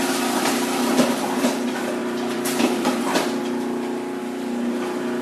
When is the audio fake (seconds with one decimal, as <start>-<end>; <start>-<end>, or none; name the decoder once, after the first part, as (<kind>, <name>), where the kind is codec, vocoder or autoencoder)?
2.0-3.0 (vocoder, BigVGAN v2)